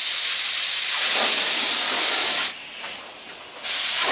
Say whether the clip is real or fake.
real